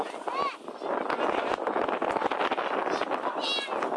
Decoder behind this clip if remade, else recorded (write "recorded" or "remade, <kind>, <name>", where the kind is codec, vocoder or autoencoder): recorded